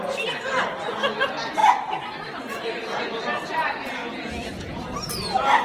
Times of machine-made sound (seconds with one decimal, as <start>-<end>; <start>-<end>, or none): 4.0-5.1